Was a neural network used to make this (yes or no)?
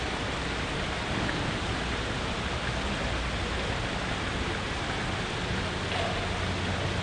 no